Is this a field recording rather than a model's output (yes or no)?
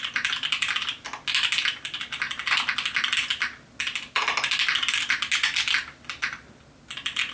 yes